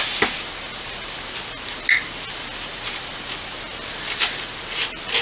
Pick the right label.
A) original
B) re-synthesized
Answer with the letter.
A